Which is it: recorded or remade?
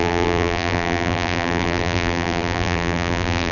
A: remade